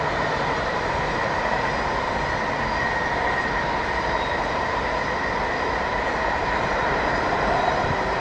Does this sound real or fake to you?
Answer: fake